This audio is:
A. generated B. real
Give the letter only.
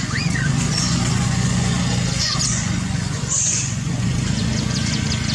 A